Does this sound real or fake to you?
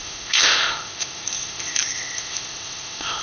fake